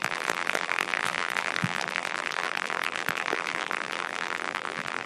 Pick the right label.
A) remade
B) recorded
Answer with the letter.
A